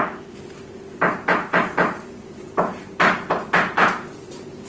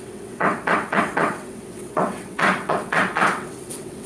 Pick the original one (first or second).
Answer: first